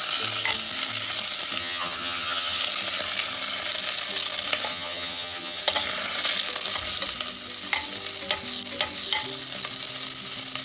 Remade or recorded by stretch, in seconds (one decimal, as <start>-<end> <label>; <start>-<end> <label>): 0.0-1.6 recorded; 1.6-2.6 remade; 2.6-4.7 recorded; 4.7-5.6 remade; 5.6-10.6 recorded